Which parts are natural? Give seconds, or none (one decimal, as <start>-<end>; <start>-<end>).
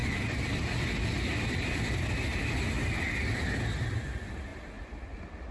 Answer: 0.9-1.3; 2.0-4.5